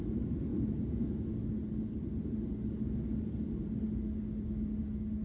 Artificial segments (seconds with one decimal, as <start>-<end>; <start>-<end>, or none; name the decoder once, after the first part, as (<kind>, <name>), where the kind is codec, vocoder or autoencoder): none